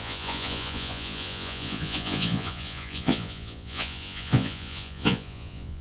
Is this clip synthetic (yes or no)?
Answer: yes